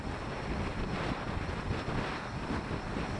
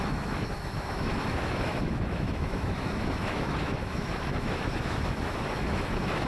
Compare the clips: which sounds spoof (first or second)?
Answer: second